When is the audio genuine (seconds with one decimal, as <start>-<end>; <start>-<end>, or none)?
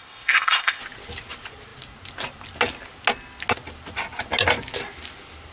0.8-5.5